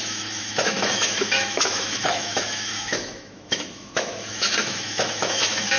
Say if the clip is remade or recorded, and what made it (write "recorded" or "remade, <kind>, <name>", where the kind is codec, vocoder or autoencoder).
remade, autoencoder, DAC-VAE